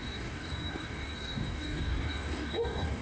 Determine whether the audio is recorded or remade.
remade